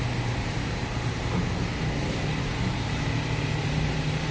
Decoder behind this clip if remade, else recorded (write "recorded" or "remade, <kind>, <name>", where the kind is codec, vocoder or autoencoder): remade, vocoder, BigVGAN v2